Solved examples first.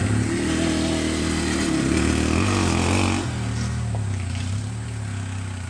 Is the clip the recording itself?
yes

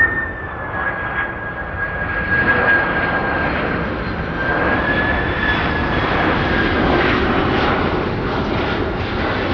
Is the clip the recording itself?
yes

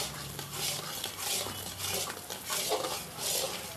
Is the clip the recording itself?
yes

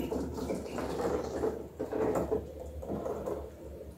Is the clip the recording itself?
no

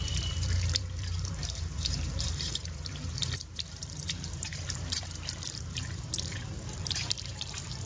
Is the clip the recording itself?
no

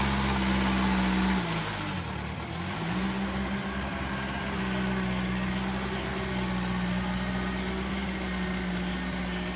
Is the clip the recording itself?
yes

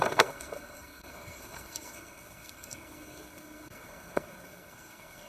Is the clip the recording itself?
no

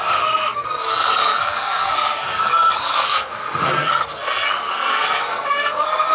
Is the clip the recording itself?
no